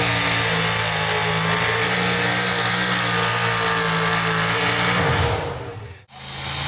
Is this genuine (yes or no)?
yes